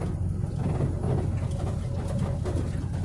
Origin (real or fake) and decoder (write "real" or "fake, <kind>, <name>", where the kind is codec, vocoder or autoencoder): real